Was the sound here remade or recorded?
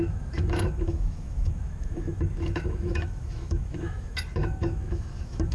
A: remade